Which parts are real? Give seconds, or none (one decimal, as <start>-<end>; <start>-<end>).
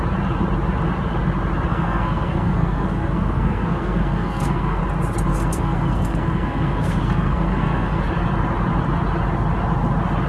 0.0-1.7; 4.8-5.3; 8.0-10.3